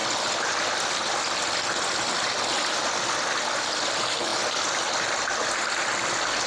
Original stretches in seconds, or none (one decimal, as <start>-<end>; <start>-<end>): 0.0-6.5